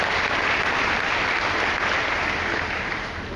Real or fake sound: real